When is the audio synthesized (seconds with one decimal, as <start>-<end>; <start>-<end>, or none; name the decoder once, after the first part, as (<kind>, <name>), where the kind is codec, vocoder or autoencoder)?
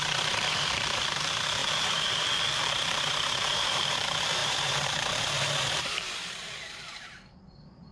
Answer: 0.0-7.9 (vocoder, BigVGAN v2)